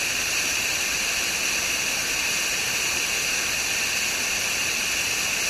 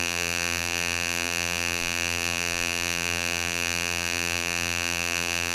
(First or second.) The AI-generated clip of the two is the second